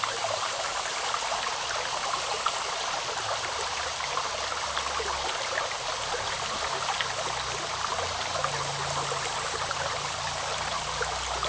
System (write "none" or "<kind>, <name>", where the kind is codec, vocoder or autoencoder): none